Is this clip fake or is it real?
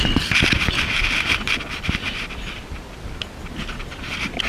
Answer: real